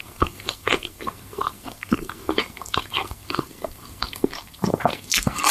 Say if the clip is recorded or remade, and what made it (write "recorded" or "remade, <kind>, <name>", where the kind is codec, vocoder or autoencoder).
remade, codec, SNAC